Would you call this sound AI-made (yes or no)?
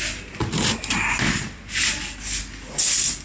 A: no